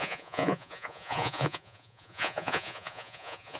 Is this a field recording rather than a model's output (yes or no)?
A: no